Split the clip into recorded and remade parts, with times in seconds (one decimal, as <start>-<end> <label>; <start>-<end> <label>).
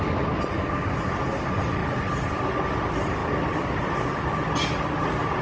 0.0-5.4 recorded